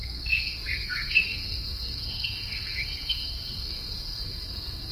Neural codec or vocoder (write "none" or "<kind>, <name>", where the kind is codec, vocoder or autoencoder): codec, SNAC